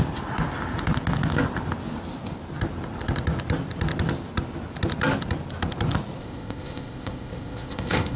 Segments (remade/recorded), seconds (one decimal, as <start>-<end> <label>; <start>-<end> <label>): 0.0-6.2 recorded; 6.2-8.2 remade